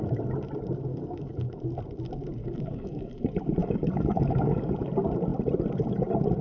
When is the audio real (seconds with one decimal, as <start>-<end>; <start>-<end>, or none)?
0.0-0.9; 1.6-2.4; 3.2-3.6; 4.7-6.4

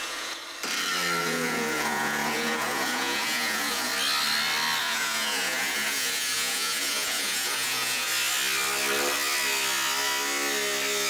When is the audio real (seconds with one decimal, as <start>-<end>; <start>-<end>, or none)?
0.4-1.2; 3.9-4.8; 8.1-11.1

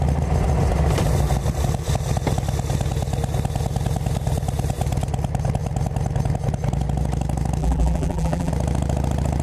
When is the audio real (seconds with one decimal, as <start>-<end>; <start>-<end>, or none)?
0.0-7.6; 8.5-9.4